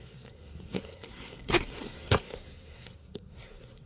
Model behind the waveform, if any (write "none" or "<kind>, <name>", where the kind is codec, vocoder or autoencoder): codec, SNAC